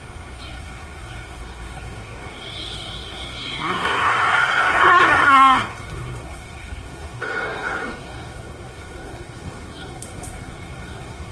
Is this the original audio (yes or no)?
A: no